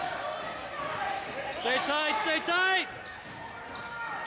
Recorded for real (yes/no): yes